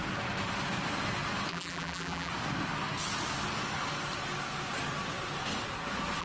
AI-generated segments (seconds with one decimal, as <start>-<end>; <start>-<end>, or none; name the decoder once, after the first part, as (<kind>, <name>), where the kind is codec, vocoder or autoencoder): 1.5-2.3 (vocoder, BigVGAN v2)